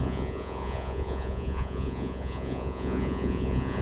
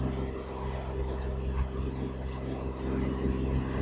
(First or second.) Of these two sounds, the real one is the second